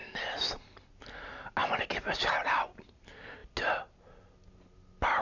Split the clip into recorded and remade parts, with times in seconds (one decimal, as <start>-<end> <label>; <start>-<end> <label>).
0.0-1.6 recorded; 1.6-2.5 remade; 2.5-5.2 recorded